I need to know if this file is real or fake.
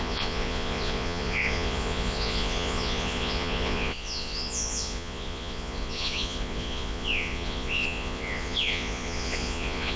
fake